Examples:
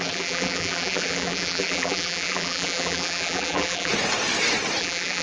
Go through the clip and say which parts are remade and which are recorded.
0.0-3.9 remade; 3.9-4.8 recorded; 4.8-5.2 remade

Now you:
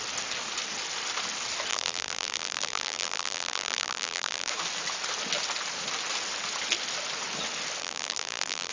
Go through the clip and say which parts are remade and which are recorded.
0.0-1.7 recorded; 1.7-4.5 remade; 4.5-7.8 recorded; 7.8-8.7 remade

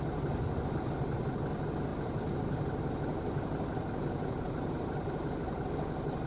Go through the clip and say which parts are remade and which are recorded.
0.0-1.9 recorded; 1.9-5.7 remade; 5.7-6.3 recorded